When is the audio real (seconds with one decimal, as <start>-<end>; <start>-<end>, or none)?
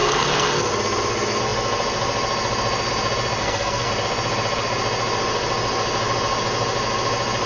0.7-3.4; 3.9-7.5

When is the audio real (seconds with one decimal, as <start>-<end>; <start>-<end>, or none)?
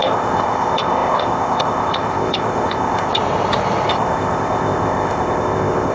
3.1-3.9